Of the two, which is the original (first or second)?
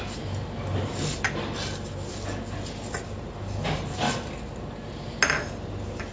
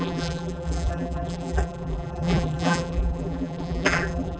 first